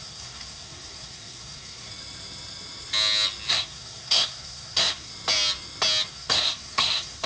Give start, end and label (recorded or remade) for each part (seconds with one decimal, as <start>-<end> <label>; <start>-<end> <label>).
0.0-1.9 remade; 1.9-3.5 recorded; 3.5-5.1 remade; 5.1-6.1 recorded; 6.1-7.3 remade